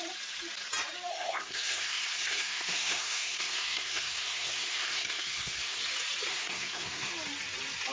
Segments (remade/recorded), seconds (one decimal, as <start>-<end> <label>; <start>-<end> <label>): 0.0-1.1 recorded; 1.1-5.8 remade; 5.8-6.3 recorded; 6.3-7.1 remade; 7.1-7.9 recorded